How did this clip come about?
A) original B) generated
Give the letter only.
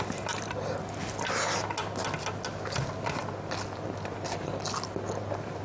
A